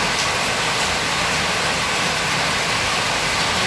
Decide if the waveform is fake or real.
real